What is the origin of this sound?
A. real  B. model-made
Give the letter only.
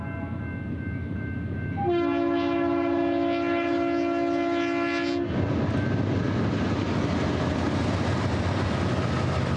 A